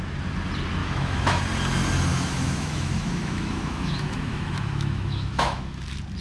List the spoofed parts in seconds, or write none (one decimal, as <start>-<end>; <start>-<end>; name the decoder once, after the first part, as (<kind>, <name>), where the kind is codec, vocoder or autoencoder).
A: 0.8-1.4 (autoencoder, DAC-VAE); 2.1-5.8